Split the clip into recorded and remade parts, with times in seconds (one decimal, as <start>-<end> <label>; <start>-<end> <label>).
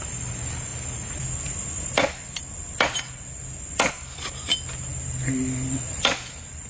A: 0.0-6.7 recorded